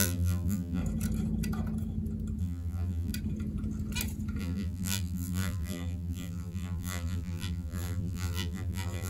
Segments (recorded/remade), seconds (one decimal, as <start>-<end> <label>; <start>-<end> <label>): 0.0-0.8 remade; 0.8-2.4 recorded; 2.4-3.1 remade; 3.1-4.4 recorded; 4.4-9.1 remade